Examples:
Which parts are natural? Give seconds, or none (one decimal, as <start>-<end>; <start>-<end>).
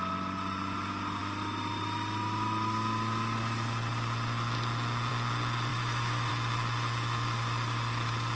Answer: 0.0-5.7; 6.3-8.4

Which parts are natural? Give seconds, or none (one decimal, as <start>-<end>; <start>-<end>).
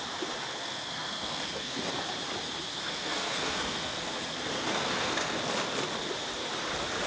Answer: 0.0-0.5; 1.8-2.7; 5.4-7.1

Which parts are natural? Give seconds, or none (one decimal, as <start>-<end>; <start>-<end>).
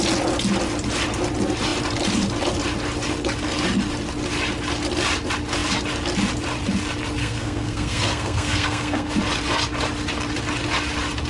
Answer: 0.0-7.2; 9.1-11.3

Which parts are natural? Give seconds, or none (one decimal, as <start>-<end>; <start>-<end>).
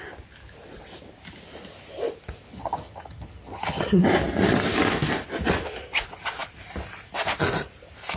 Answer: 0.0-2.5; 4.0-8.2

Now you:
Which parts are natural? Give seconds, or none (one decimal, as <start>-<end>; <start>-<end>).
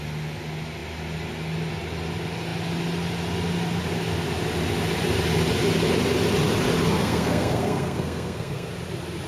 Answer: 0.0-7.0; 8.7-9.3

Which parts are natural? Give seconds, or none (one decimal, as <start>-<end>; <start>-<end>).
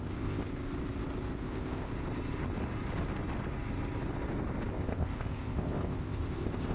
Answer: 0.5-1.4; 1.9-4.7